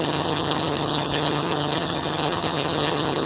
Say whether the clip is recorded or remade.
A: remade